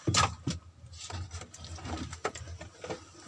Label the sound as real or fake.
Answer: real